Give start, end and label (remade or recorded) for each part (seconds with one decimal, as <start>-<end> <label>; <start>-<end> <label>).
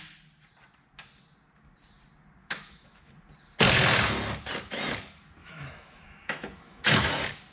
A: 0.0-2.4 recorded; 2.4-3.1 remade; 3.1-5.4 recorded; 5.4-7.1 remade; 7.1-7.5 recorded